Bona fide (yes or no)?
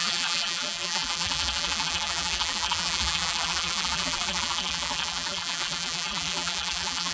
no